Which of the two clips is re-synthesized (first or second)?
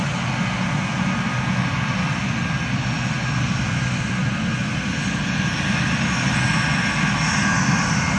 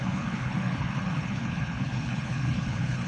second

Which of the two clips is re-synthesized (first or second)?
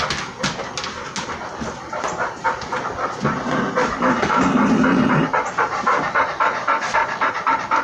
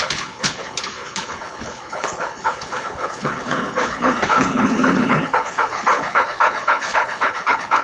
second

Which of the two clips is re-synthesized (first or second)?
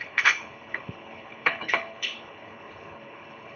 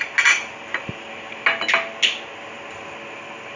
first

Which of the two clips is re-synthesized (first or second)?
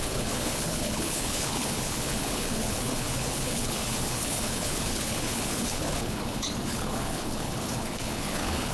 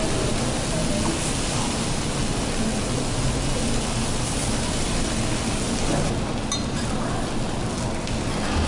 first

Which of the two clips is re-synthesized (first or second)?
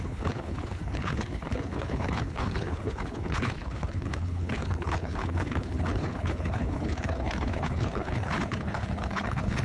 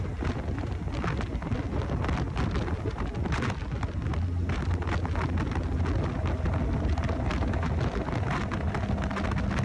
first